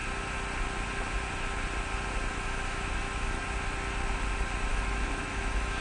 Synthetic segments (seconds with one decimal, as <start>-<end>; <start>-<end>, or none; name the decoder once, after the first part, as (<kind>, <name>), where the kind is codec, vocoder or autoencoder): 2.3-3.4 (autoencoder, DAC-VAE); 4.7-5.8